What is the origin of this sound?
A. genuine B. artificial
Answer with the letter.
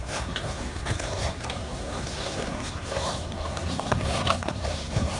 B